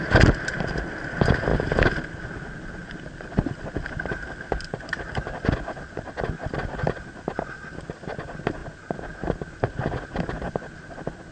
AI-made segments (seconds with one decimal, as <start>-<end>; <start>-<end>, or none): none

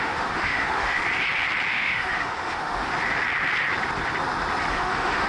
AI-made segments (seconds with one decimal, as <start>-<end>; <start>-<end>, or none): 0.0-1.0; 1.7-2.9; 4.7-5.3

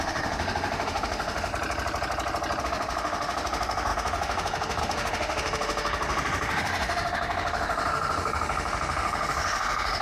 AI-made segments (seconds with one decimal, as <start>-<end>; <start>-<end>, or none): 0.0-1.5; 2.6-10.0

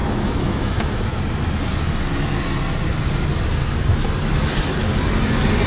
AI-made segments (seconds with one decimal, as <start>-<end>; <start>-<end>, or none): 0.0-1.2

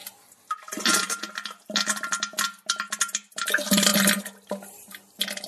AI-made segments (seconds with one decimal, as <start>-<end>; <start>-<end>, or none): none

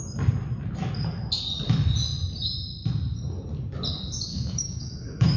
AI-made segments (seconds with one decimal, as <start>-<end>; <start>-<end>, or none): 4.3-5.4

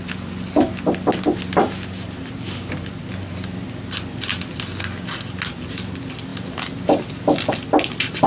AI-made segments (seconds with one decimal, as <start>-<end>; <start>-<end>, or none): none